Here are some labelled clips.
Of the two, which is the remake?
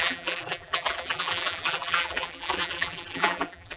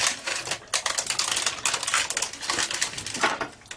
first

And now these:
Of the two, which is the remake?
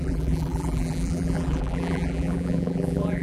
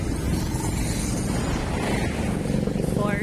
first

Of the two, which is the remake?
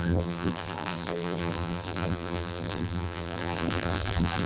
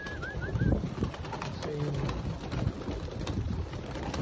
first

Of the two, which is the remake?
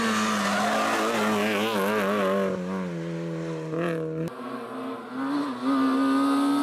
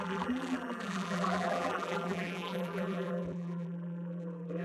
second